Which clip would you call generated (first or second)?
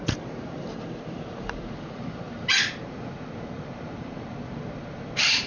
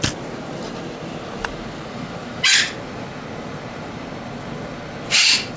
first